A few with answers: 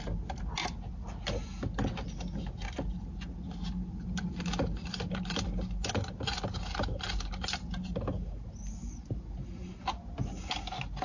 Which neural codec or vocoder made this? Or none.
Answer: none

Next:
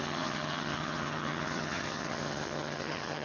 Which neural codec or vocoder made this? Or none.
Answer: vocoder, HiFi-GAN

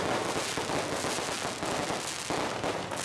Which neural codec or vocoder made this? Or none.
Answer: none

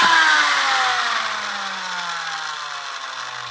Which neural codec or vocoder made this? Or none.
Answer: none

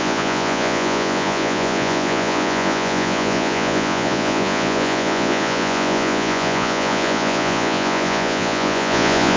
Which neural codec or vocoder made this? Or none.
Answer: vocoder, Vocos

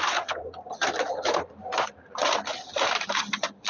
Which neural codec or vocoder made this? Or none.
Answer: vocoder, BigVGAN v2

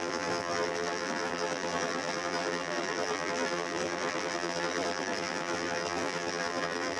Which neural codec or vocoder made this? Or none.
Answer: vocoder, BigVGAN v2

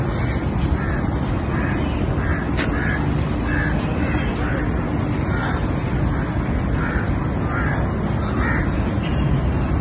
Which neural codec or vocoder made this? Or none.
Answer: none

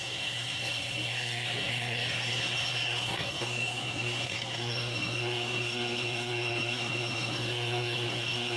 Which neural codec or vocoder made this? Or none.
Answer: codec, SNAC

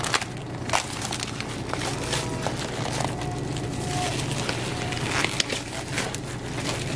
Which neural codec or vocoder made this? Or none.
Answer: none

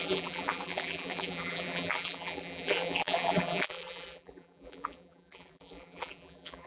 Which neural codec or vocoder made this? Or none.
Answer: vocoder, BigVGAN v2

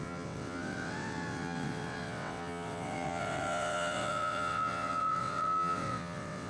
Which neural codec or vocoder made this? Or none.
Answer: vocoder, WaveNeXt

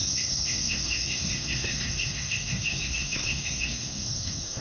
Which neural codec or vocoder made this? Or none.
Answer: codec, SNAC